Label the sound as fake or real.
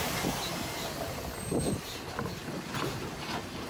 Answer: fake